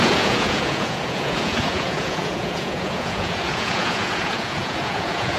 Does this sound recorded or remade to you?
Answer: remade